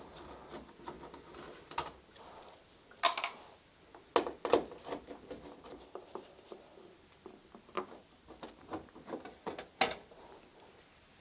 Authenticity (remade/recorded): recorded